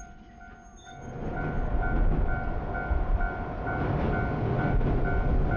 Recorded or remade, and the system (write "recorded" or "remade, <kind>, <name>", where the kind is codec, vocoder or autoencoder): recorded